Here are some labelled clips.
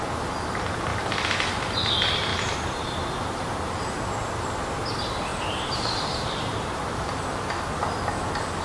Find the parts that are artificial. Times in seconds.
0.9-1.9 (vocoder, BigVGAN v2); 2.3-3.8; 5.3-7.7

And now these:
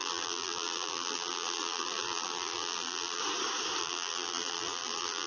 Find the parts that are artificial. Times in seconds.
0.0-3.2 (vocoder, BigVGAN v2); 3.8-5.3

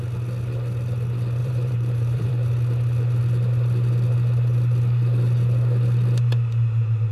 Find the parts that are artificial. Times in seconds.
1.4-2.3 (vocoder, BigVGAN v2)

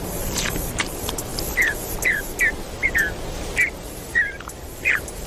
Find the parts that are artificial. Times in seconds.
0.0-1.3 (vocoder, BigVGAN v2); 1.8-5.3

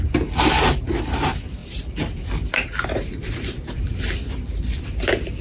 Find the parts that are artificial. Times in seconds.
1.6-4.7 (vocoder, BigVGAN v2)

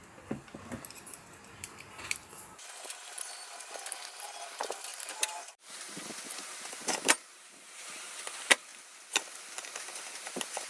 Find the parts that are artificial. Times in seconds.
4.9-6.0 (vocoder, BigVGAN v2); 7.3-8.1